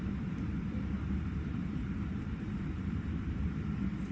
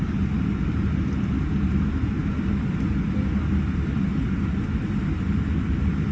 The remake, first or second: first